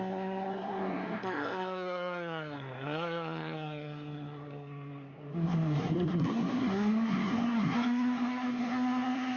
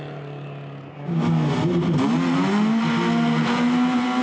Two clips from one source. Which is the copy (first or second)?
first